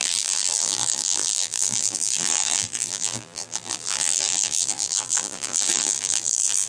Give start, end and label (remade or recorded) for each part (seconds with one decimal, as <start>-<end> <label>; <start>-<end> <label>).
0.0-6.7 remade